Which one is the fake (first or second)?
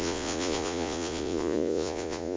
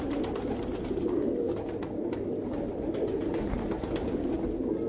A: first